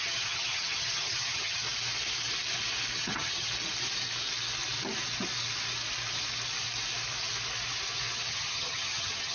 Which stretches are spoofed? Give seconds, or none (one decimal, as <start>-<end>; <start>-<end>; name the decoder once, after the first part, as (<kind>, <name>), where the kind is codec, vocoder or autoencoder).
0.0-1.6 (vocoder, HiFi-GAN); 3.0-3.5; 8.3-9.3

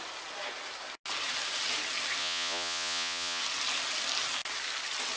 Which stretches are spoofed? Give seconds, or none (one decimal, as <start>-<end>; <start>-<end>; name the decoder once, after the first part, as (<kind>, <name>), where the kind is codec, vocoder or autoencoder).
2.2-3.4 (vocoder, Vocos)